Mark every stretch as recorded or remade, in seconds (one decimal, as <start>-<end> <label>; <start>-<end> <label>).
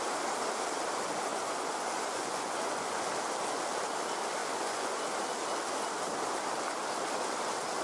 0.0-1.3 recorded; 1.3-3.1 remade; 3.1-4.4 recorded; 4.4-5.0 remade; 5.0-7.8 recorded